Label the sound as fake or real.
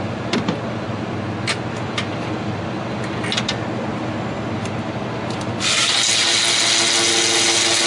real